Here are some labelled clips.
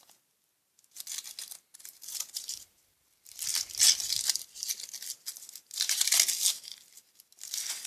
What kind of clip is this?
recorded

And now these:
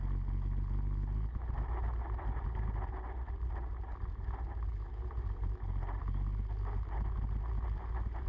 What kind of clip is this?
recorded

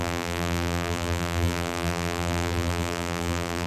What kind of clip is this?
remade